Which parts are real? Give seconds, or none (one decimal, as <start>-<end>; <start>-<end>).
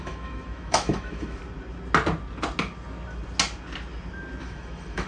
1.4-4.4